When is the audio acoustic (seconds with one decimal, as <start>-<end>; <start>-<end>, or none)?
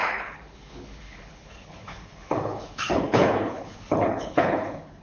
none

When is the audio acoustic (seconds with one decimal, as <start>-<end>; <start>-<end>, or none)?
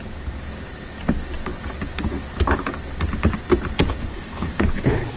0.0-4.1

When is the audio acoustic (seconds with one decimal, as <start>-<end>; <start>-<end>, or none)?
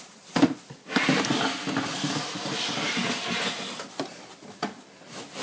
0.0-5.4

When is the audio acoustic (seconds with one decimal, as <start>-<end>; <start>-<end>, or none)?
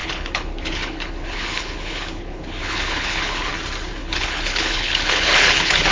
3.5-4.0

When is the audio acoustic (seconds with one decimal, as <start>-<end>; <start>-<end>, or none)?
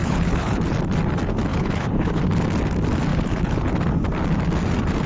0.6-1.5; 2.2-3.1; 3.6-5.1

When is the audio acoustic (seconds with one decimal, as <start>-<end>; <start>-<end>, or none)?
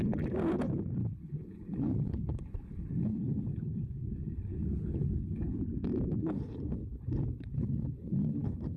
0.0-1.0; 5.6-6.2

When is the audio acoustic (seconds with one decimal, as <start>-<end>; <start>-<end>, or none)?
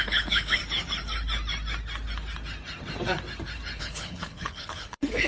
0.6-3.8